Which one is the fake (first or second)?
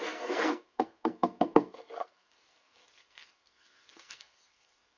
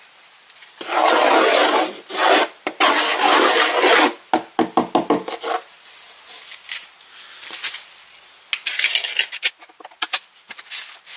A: first